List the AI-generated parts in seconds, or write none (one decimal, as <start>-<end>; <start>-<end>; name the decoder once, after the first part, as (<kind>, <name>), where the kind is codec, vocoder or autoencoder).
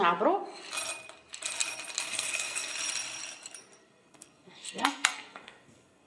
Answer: 2.1-2.7 (codec, SNAC); 3.8-6.1